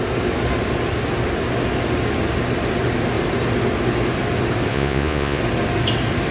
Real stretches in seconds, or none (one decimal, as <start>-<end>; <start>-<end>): 0.0-4.7; 5.4-6.3